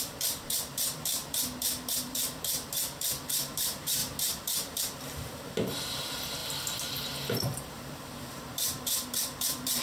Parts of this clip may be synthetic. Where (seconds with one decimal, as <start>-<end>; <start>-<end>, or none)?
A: 0.0-1.2; 1.9-9.8